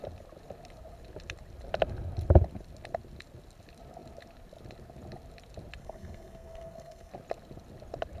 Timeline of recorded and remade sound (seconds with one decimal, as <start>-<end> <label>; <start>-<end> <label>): 0.0-5.8 recorded; 5.8-7.1 remade; 7.1-8.2 recorded